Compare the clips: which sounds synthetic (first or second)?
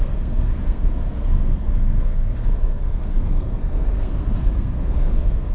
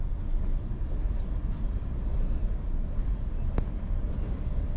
first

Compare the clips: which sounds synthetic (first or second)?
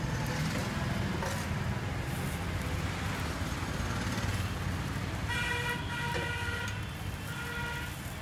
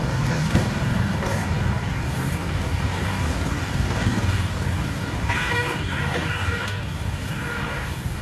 second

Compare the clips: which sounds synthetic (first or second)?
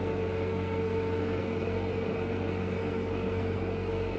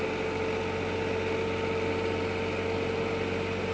first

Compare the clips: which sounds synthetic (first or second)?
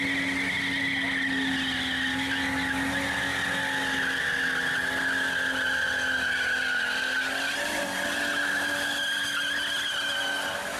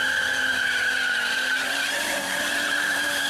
second